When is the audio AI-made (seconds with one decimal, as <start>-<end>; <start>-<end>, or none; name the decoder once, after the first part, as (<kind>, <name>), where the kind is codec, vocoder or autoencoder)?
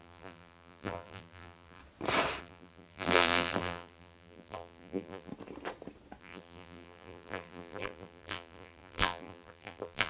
0.0-1.8 (vocoder, BigVGAN v2); 2.4-5.3; 6.2-10.1